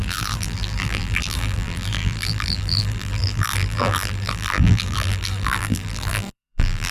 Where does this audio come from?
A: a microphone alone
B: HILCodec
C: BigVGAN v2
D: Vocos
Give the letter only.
C